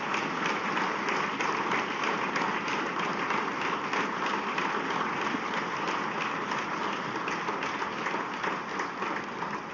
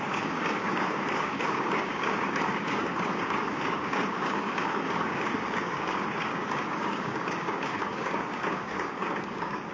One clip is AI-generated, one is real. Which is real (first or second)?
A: first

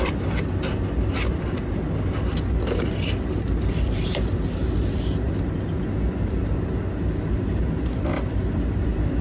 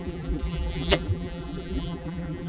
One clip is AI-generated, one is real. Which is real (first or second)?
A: first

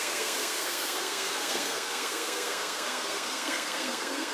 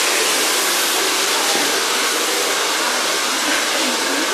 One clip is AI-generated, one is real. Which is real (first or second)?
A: second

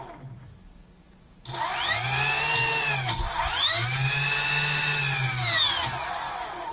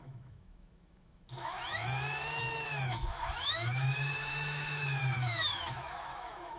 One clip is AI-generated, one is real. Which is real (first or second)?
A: first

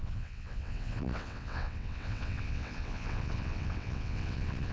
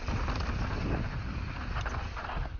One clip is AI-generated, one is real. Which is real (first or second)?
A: second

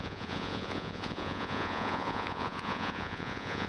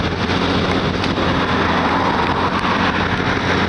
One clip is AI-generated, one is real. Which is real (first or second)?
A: second